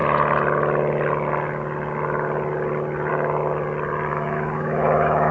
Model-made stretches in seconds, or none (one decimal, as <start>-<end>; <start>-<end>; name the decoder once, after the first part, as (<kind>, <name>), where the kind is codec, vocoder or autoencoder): 4.1-5.3 (autoencoder, DAC-VAE)